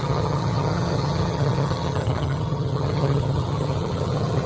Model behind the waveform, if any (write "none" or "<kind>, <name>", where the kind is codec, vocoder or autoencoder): vocoder, HiFi-GAN